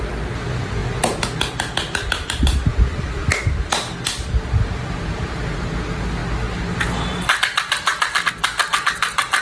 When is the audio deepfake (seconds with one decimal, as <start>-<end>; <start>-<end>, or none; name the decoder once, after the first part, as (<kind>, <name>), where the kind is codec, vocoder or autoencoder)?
none